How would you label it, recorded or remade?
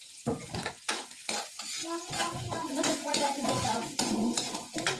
remade